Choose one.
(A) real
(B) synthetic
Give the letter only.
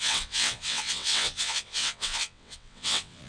B